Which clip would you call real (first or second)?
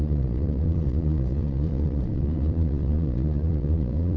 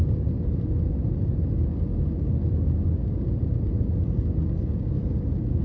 second